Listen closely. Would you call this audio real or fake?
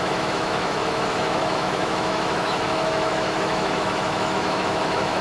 fake